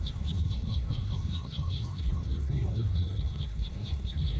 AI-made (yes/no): yes